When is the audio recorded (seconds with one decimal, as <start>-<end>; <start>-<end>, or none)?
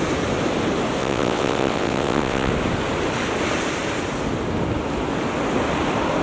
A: 0.0-1.0; 2.5-6.2